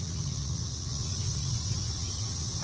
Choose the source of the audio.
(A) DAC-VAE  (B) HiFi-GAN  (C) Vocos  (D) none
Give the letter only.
C